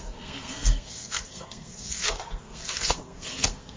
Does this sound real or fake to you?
fake